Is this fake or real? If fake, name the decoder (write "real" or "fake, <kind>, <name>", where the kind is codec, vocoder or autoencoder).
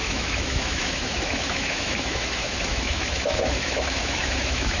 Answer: fake, autoencoder, DAC-VAE